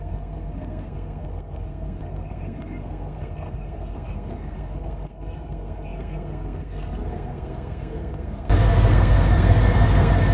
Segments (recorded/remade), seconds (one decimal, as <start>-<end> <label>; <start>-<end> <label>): 0.0-10.3 remade